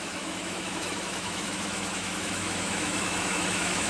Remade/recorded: remade